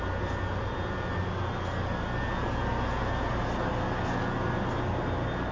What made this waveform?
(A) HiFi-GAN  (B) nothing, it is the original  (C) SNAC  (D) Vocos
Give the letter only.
B